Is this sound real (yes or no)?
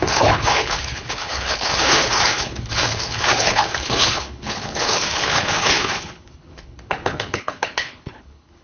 no